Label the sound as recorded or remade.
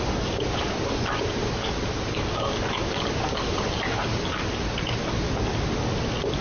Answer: recorded